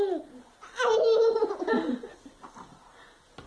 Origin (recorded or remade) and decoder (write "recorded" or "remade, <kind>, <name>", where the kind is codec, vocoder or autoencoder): recorded